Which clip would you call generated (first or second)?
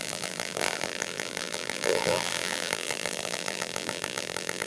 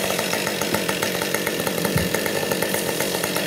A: first